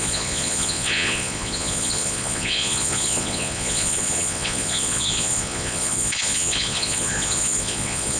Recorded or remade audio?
remade